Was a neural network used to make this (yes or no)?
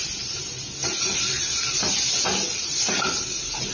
no